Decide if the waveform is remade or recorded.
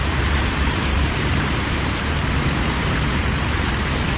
remade